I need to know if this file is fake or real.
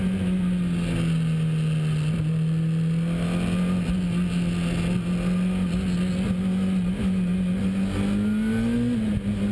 real